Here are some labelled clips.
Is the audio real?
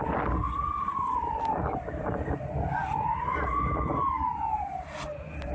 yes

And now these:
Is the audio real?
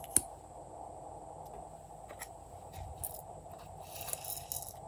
yes